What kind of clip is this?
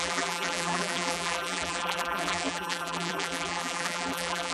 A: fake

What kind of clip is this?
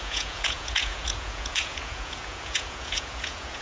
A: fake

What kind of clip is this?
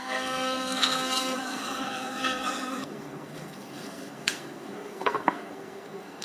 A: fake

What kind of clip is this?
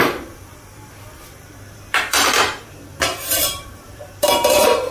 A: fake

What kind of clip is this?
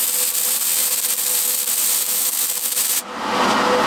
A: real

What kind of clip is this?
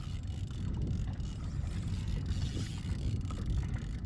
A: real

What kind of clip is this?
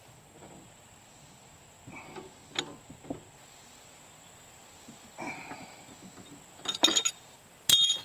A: real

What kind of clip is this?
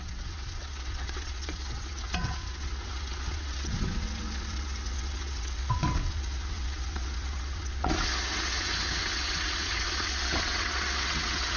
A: fake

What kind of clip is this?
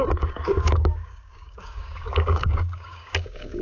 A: fake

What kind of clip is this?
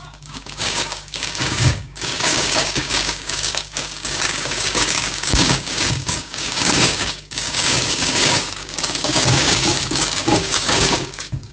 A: fake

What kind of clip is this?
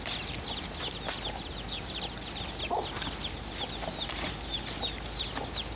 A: real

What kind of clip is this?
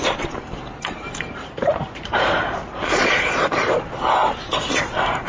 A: fake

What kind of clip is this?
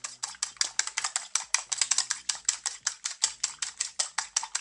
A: real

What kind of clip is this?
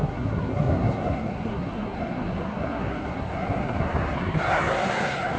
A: fake